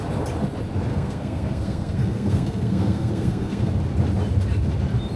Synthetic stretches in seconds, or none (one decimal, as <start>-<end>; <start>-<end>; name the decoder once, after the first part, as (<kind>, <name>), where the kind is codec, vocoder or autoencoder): 0.9-3.7 (codec, SNAC)